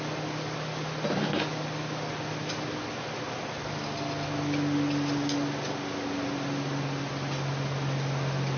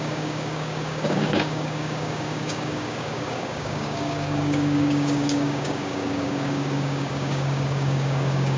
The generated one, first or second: second